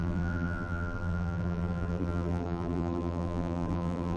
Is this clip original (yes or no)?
no